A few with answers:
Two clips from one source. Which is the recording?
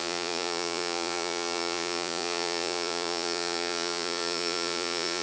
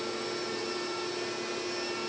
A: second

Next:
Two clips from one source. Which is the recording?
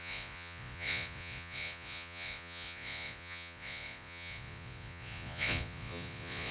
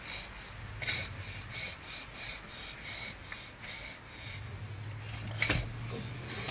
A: second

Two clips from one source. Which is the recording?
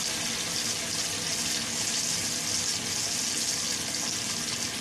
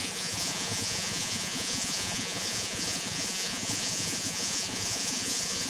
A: first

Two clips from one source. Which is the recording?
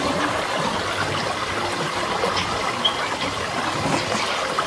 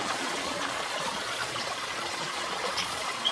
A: first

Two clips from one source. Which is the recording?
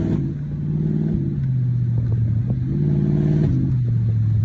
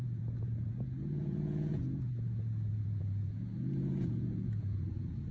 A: first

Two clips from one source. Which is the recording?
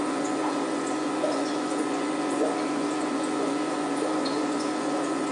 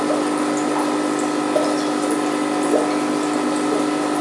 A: second